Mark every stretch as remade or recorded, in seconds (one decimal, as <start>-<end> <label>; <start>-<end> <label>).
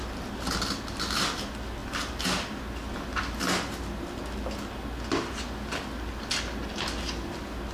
0.0-7.7 recorded